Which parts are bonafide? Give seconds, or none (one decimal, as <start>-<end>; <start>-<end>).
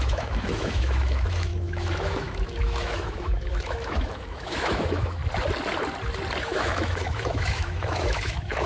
5.2-6.4